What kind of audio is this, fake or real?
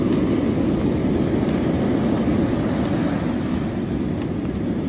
real